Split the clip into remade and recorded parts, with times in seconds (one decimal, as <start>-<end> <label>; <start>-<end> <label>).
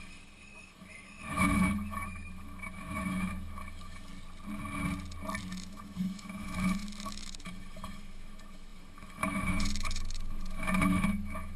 0.0-4.1 remade; 4.1-5.5 recorded; 5.5-11.6 remade